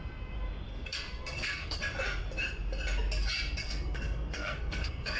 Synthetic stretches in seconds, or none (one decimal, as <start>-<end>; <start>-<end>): 0.7-1.8; 3.6-5.2